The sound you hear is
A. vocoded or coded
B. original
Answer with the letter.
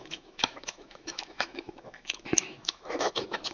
A